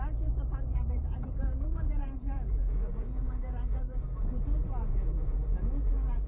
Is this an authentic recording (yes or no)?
no